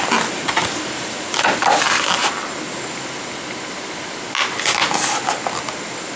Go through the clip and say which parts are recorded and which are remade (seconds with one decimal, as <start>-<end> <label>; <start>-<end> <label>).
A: 0.0-6.2 recorded